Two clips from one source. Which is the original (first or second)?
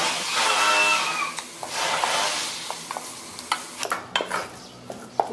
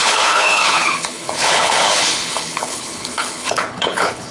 first